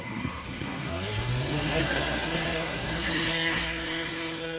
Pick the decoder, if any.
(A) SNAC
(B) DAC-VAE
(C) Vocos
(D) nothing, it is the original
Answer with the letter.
A